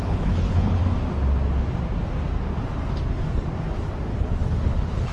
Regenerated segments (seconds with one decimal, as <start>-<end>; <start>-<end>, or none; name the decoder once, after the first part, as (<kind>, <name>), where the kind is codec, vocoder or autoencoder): 0.0-0.8 (codec, HILCodec); 4.1-5.1